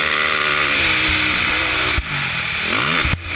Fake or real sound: real